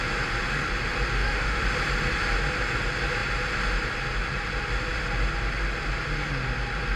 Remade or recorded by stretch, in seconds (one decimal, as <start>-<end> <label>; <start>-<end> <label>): 0.0-1.1 recorded; 1.1-1.6 remade; 1.6-7.0 recorded